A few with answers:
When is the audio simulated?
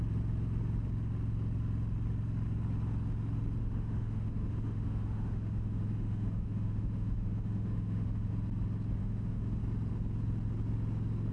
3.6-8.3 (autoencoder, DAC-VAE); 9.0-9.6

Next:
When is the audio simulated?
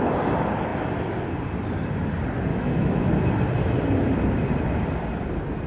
2.5-3.1 (autoencoder, DAC-VAE)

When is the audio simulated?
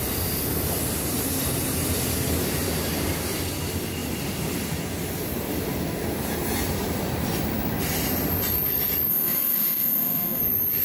9.1-10.4 (autoencoder, DAC-VAE)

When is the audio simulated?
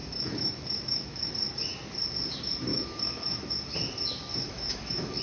0.0-1.3 (autoencoder, DAC-VAE); 2.7-3.5; 4.3-5.2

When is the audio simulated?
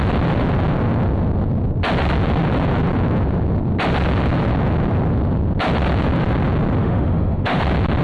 6.8-7.6 (autoencoder, DAC-VAE)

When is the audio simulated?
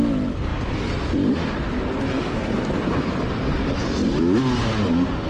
none